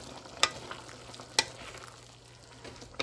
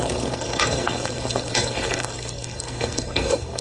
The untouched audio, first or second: first